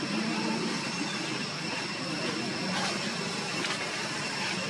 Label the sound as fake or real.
real